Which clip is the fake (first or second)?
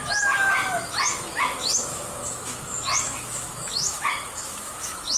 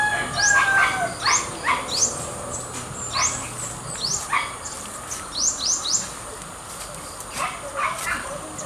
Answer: first